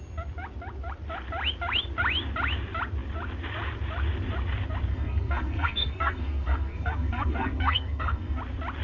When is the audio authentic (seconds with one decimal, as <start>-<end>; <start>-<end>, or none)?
0.0-4.9; 8.4-8.8